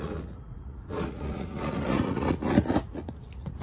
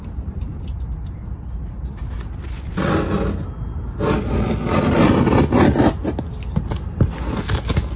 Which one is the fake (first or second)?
first